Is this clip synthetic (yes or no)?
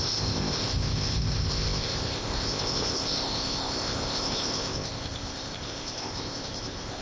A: yes